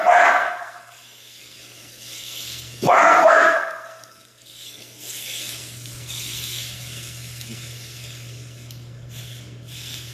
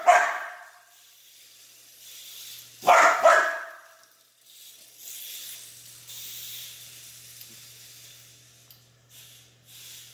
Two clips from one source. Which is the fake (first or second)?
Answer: first